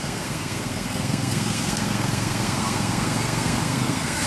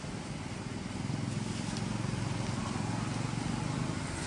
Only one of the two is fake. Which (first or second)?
first